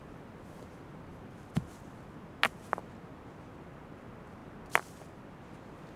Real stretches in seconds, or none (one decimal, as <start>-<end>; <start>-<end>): 0.0-6.0